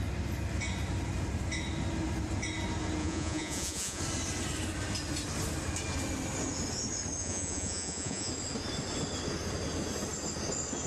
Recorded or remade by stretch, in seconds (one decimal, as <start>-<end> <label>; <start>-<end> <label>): 0.0-3.0 recorded; 3.0-4.0 remade; 4.0-7.2 recorded; 7.2-8.3 remade; 8.3-10.9 recorded